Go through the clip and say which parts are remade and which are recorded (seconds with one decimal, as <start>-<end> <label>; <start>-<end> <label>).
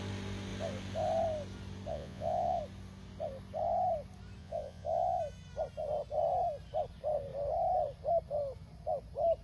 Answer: 0.0-1.9 recorded; 1.9-2.6 remade; 2.6-4.4 recorded; 4.4-5.2 remade; 5.2-9.4 recorded